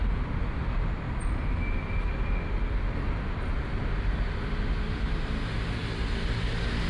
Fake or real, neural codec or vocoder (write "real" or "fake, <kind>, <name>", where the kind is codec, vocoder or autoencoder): real